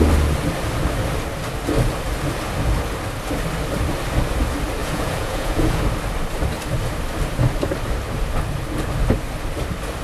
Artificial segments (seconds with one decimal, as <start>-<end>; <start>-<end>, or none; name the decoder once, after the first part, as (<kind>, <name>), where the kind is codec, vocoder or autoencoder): 4.8-5.8 (vocoder, Vocos)